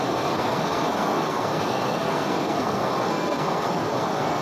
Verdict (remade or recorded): remade